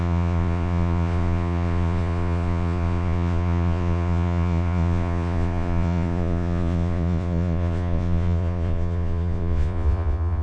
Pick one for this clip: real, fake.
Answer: fake